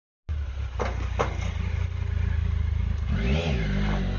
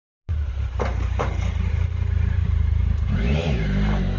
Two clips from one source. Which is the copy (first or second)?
second